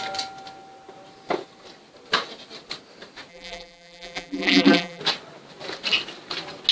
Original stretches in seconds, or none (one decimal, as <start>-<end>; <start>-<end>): 0.0-3.3; 5.0-6.7